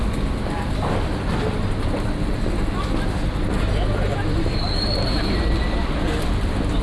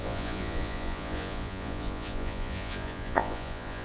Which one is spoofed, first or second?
second